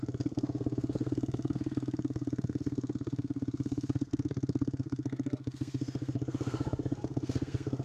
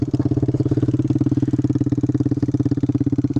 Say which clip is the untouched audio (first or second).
second